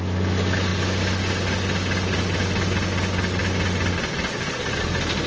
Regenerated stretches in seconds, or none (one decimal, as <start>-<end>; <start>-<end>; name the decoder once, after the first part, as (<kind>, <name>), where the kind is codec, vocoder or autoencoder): none